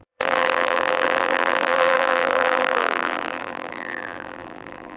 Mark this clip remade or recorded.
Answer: remade